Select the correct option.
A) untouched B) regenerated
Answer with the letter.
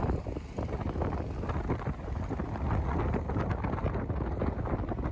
A